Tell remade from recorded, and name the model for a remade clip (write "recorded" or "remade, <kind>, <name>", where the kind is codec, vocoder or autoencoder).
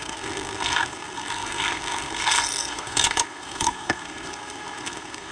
remade, codec, SNAC